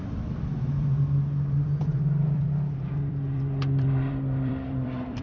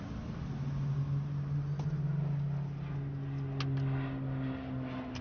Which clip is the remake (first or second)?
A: first